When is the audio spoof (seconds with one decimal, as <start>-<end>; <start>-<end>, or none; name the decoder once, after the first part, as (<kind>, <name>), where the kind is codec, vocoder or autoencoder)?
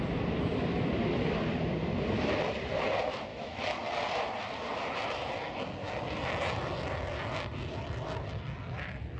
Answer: 3.3-3.9 (autoencoder, DAC-VAE)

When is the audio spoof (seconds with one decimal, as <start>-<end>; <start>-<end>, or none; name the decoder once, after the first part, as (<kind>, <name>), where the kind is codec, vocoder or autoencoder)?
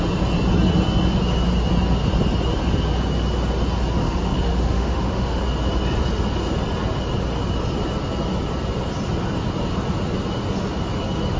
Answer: 4.0-5.4 (autoencoder, DAC-VAE)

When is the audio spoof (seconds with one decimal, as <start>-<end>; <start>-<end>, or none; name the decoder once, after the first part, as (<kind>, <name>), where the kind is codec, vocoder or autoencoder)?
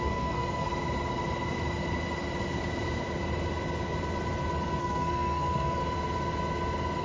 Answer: 0.0-0.7 (codec, SNAC); 4.8-5.8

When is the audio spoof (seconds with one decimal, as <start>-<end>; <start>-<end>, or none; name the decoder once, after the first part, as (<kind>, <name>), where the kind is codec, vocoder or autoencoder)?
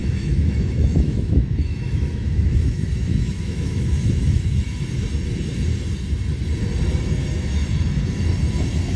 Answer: 0.0-4.9 (autoencoder, DAC-VAE)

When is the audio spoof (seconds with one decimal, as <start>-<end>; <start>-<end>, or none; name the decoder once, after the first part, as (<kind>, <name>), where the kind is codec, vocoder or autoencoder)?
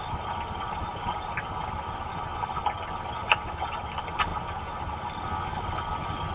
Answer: none